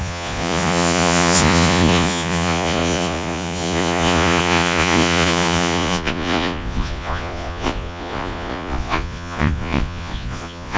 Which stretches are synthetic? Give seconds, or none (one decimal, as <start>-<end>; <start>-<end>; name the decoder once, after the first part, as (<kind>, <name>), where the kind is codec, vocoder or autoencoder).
0.0-10.8 (vocoder, Vocos)